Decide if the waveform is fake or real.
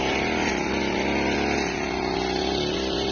real